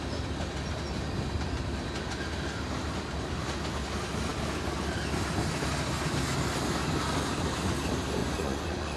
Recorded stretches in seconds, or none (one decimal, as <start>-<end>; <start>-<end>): 0.0-8.2